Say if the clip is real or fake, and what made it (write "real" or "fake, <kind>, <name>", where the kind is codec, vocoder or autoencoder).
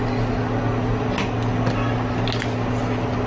real